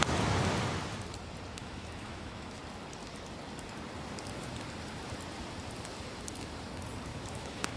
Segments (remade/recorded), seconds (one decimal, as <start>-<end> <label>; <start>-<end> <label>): 0.0-1.6 recorded; 1.6-2.6 remade; 2.6-7.1 recorded; 7.1-7.8 remade